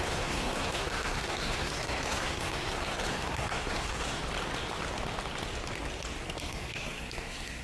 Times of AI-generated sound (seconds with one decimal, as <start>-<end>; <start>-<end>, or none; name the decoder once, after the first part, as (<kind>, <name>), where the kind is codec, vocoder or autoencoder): 0.0-4.2 (codec, SNAC); 6.4-7.6